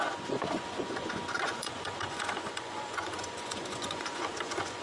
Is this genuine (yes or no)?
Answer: no